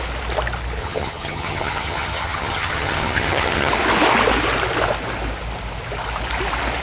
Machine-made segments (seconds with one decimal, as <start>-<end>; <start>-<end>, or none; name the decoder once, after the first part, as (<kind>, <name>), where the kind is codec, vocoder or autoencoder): 0.8-3.7 (vocoder, HiFi-GAN)